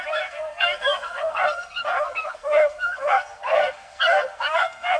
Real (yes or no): no